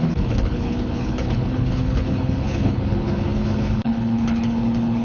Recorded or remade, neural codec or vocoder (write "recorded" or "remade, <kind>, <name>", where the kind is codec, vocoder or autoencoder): remade, codec, HILCodec